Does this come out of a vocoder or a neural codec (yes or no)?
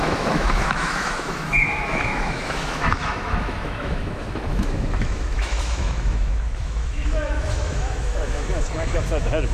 yes